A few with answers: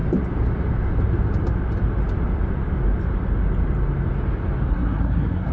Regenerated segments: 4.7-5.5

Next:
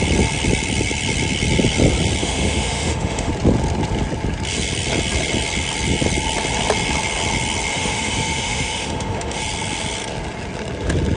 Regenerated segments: 2.2-3.3; 7.7-9.4

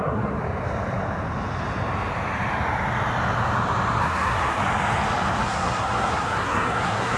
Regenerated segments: 0.0-0.4; 4.0-4.6; 5.4-7.2

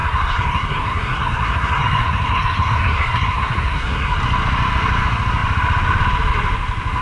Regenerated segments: 0.0-4.2

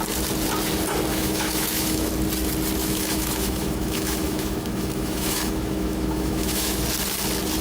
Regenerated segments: 1.1-2.1; 2.8-6.8

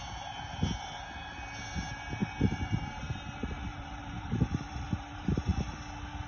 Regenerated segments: 2.2-3.0; 3.7-5.8

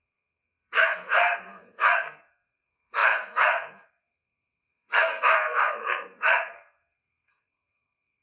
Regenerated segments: 0.0-8.2

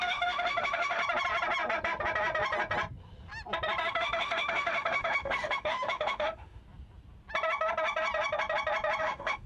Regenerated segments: 0.0-1.0; 3.9-6.6; 9.0-9.5